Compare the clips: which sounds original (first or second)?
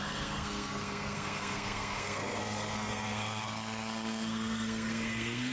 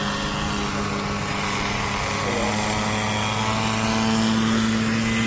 second